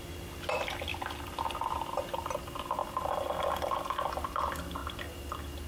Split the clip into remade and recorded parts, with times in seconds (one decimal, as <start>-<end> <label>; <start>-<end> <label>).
0.0-5.7 recorded